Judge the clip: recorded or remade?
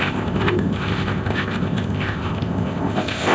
remade